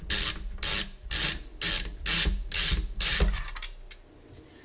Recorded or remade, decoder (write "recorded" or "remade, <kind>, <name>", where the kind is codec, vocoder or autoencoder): recorded